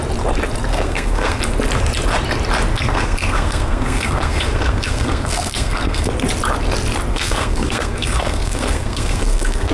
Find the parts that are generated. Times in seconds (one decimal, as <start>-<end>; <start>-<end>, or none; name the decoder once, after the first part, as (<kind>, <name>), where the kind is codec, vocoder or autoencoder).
0.7-1.4 (codec, SNAC); 2.7-6.1; 7.1-9.7